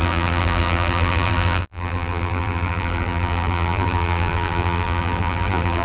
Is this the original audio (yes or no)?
no